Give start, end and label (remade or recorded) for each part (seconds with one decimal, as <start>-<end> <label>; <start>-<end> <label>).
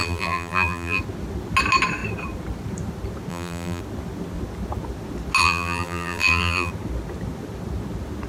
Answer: 0.0-1.0 remade; 1.0-3.3 recorded; 3.3-3.8 remade; 3.8-5.4 recorded; 5.4-6.7 remade; 6.7-8.3 recorded